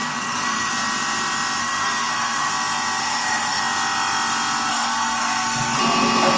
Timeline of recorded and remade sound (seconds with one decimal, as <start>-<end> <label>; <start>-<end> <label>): 0.0-0.7 remade; 0.7-1.6 recorded; 1.6-2.5 remade; 2.5-3.0 recorded; 3.0-3.6 remade; 3.6-4.7 recorded; 4.7-5.8 remade; 5.8-6.4 recorded